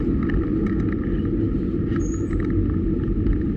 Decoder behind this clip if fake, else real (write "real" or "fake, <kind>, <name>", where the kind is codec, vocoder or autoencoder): real